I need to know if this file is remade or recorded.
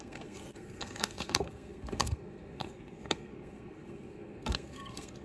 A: remade